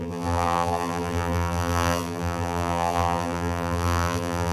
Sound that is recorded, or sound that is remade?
remade